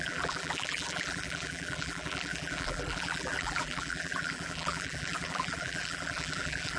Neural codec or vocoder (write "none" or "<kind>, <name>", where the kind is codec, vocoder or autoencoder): vocoder, BigVGAN v2